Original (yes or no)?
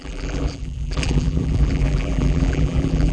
no